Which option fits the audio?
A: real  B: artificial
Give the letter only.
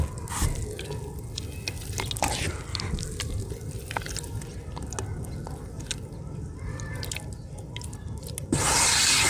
A